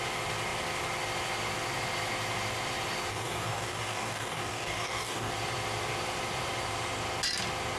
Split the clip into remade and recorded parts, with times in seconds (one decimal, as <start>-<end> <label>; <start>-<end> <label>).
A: 0.0-3.1 recorded; 3.1-5.3 remade; 5.3-7.8 recorded